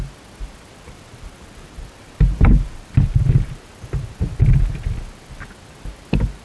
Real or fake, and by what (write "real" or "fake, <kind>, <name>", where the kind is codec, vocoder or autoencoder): real